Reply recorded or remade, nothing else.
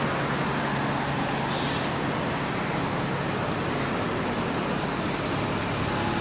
recorded